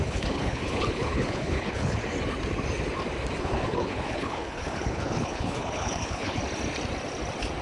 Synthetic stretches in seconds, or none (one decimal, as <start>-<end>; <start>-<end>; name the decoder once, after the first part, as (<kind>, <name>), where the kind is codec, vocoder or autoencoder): 0.0-2.0 (codec, HILCodec); 3.4-6.4

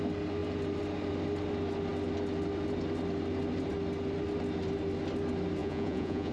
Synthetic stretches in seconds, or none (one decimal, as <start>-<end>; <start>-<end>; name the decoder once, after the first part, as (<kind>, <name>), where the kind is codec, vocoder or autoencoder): 5.6-6.3 (vocoder, Vocos)

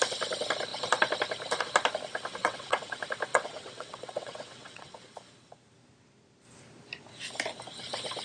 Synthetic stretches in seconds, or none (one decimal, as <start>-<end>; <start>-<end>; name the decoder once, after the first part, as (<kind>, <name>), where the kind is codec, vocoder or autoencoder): 2.4-2.9 (vocoder, WaveNeXt); 3.3-4.9

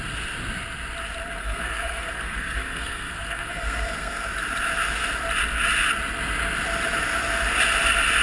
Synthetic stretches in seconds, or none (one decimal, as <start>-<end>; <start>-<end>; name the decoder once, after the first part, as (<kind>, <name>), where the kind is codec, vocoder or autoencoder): 1.4-4.3 (codec, SNAC)

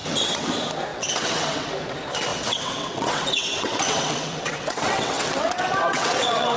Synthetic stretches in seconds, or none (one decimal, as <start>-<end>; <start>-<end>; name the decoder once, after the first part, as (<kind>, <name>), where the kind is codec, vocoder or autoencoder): 0.0-0.5 (vocoder, WaveNeXt); 0.9-1.7; 2.3-6.6

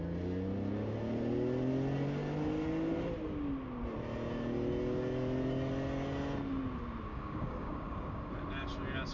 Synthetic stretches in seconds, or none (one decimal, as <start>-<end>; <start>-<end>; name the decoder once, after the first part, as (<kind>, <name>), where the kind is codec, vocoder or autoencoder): 7.1-8.3 (codec, DAC)

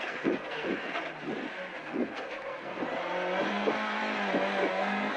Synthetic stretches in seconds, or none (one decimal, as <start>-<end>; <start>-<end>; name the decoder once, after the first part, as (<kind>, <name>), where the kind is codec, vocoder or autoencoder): 0.0-1.0 (codec, SNAC); 1.8-2.8; 3.5-4.0; 4.7-5.2